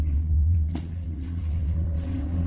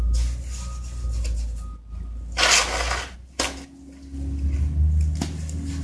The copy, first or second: first